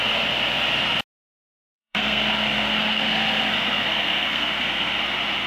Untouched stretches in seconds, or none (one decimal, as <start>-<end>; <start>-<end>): 0.0-1.6; 4.9-5.5

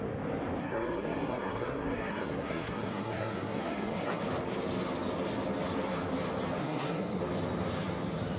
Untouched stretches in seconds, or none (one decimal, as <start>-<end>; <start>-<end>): 0.0-0.6; 4.2-6.6; 7.2-8.4

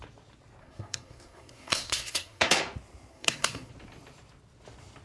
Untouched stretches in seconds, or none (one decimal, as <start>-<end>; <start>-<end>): 0.0-0.6; 2.6-3.1; 3.7-5.0

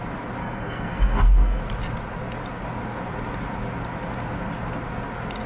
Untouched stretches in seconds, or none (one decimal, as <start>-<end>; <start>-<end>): 0.0-0.4; 1.6-5.5

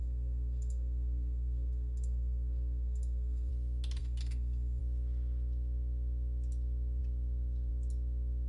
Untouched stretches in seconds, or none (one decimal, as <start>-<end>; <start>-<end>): 3.5-4.0; 4.8-8.5

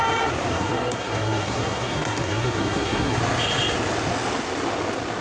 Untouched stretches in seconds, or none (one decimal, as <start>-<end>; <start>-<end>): 0.0-0.5; 3.2-5.2

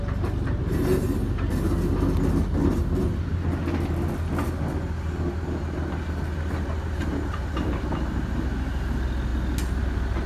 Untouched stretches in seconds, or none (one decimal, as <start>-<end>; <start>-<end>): 0.0-10.3